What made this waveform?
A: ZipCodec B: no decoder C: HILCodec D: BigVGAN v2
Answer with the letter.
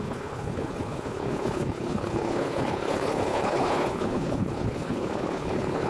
C